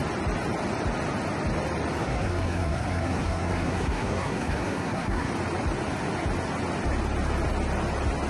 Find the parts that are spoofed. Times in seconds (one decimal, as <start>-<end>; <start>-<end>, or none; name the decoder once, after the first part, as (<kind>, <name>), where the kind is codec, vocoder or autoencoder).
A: 2.0-5.3 (codec, SNAC)